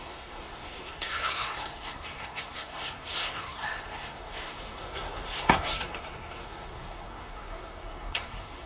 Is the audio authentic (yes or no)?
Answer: no